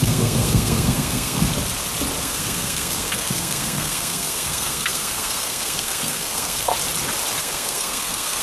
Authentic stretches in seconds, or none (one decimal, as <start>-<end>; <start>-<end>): 1.5-2.2; 6.7-7.4